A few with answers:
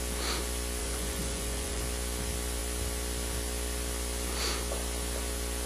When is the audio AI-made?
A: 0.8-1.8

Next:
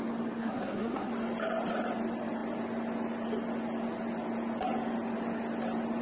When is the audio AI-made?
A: 0.4-1.1

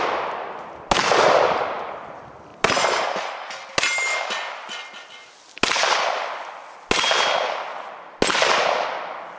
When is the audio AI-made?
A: none

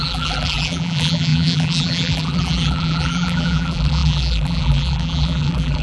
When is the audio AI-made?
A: 0.0-5.8

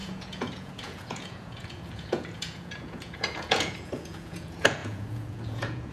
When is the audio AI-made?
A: 0.0-5.9

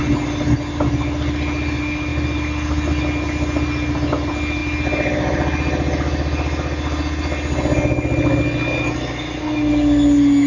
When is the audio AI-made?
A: none